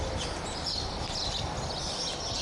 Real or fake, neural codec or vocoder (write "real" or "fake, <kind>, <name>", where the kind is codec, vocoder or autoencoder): real